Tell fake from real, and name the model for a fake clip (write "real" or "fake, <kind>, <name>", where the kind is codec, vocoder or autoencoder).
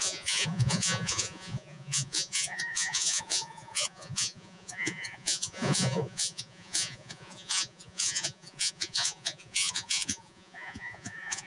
fake, vocoder, Vocos